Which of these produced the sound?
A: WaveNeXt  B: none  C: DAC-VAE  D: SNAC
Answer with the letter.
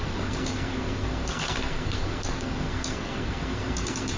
D